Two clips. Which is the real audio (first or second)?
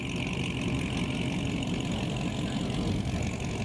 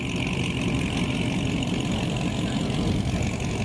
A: first